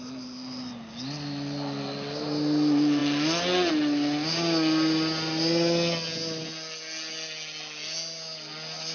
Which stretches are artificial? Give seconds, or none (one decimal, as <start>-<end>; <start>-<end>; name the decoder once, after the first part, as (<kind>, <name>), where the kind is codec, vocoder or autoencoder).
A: none